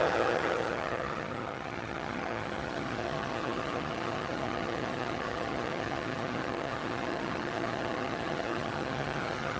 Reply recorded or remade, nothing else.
remade